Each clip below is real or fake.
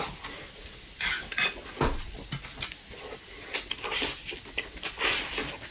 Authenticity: real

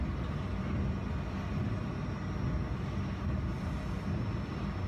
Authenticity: real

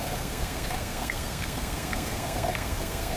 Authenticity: fake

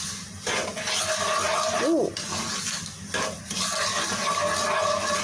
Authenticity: real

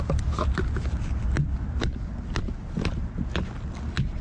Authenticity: real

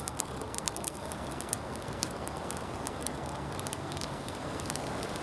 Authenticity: fake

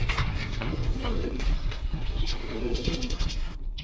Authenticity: fake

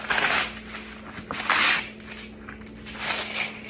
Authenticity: real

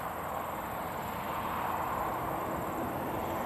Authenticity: real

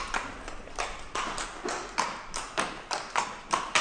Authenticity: real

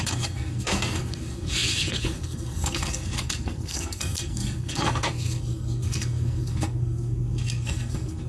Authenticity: fake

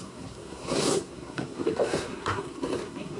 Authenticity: fake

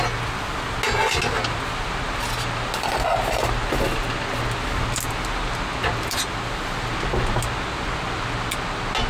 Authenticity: real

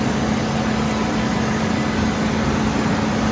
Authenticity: real